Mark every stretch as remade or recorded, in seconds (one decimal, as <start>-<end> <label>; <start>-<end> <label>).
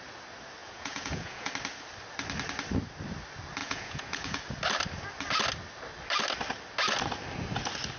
0.0-0.6 recorded; 0.6-1.5 remade; 1.5-3.6 recorded; 3.6-4.4 remade; 4.4-8.0 recorded